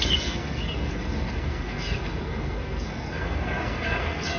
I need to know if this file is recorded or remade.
remade